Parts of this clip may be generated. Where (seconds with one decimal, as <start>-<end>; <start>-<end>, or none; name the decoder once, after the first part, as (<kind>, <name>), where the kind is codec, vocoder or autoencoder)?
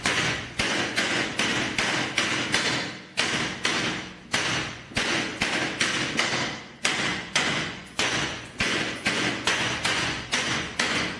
0.0-1.3 (vocoder, Vocos); 4.7-5.3; 6.6-11.2